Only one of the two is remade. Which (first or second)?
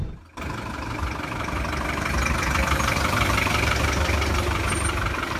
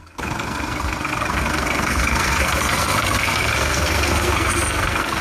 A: second